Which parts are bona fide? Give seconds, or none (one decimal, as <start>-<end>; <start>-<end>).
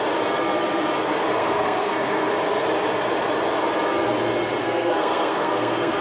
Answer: 0.0-1.4; 2.3-4.6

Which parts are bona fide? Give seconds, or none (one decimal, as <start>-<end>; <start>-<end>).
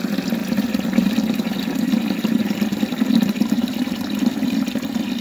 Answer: 0.0-0.4; 3.5-5.2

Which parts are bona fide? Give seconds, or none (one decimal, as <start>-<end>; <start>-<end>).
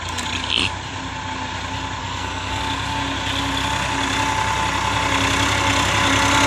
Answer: 0.0-2.0; 2.6-6.5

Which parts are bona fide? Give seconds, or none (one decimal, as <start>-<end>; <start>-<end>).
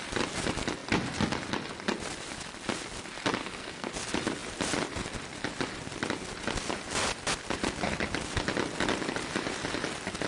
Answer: 0.0-3.4; 3.9-10.3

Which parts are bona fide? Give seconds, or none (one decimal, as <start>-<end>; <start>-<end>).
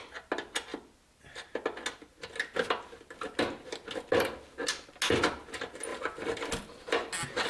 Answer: 0.0-7.5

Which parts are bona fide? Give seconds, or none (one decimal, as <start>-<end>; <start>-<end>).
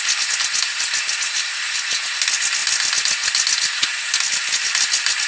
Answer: 0.0-5.3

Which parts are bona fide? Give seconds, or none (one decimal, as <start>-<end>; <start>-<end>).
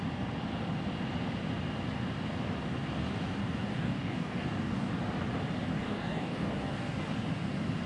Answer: 0.0-3.4; 4.9-5.7; 7.0-7.9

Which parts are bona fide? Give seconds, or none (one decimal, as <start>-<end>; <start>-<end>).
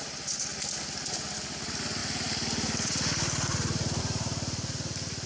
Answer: 0.0-2.0; 4.0-5.3